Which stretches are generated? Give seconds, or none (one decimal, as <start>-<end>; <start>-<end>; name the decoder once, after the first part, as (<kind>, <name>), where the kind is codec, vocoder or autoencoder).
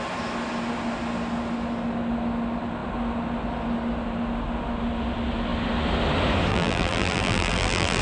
6.5-8.0 (vocoder, BigVGAN v2)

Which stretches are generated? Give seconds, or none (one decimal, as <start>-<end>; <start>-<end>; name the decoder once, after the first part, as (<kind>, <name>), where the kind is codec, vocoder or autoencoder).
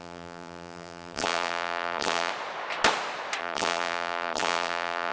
0.0-2.3 (vocoder, BigVGAN v2); 3.4-5.1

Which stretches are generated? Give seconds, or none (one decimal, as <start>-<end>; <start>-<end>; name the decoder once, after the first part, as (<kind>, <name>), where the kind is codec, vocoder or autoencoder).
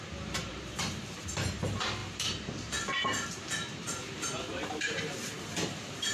0.0-6.1 (vocoder, BigVGAN v2)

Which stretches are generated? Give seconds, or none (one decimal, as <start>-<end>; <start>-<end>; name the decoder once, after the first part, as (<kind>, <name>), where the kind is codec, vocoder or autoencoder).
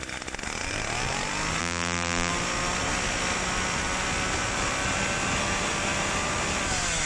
1.6-2.3 (vocoder, BigVGAN v2)